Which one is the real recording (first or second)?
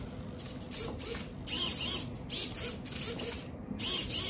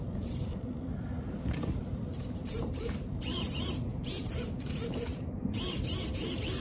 first